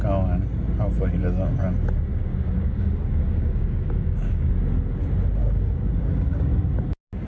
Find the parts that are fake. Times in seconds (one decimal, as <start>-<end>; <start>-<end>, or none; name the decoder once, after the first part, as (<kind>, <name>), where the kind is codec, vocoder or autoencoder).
2.3-4.5 (codec, DAC); 5.4-6.6